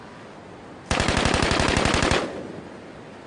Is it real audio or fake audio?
real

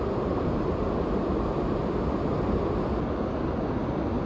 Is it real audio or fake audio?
real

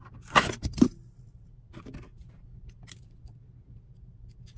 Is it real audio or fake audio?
real